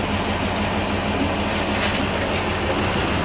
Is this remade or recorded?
recorded